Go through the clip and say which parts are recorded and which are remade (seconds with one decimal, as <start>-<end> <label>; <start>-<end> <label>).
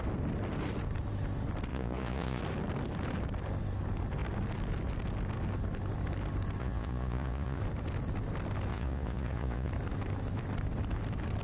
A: 0.0-1.7 recorded; 1.7-2.4 remade; 2.4-6.6 recorded; 6.6-7.6 remade; 7.6-8.7 recorded; 8.7-9.7 remade; 9.7-11.4 recorded